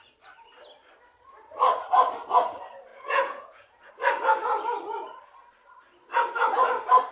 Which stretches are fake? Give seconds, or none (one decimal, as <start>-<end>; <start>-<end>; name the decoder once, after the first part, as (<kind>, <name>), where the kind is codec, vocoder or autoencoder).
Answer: 2.9-3.9 (vocoder, Vocos)